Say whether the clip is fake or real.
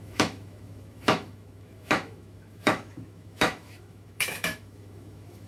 fake